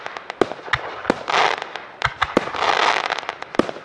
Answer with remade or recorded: recorded